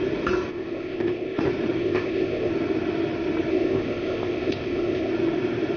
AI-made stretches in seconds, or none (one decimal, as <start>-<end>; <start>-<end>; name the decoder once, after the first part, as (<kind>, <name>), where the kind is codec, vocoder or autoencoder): 0.5-1.4 (codec, ZipCodec); 1.8-2.5; 3.5-5.1